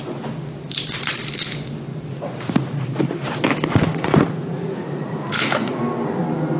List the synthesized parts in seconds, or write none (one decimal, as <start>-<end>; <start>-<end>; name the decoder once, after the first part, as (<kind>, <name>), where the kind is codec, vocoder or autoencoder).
1.9-3.0 (vocoder, Vocos); 3.9-5.8